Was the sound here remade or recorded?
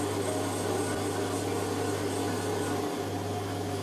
recorded